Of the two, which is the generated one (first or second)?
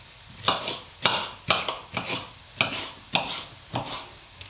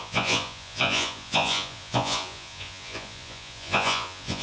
second